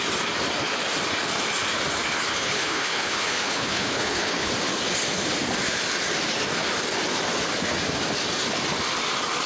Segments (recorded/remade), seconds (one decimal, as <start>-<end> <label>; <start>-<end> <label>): 0.0-2.3 recorded; 2.3-4.5 remade; 4.5-9.5 recorded